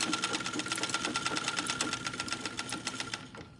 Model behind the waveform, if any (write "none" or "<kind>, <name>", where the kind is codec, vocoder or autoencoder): none